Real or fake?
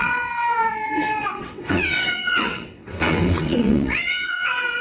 fake